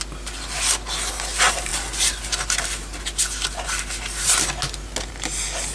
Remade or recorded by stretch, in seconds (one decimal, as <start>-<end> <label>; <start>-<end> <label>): 0.0-5.7 recorded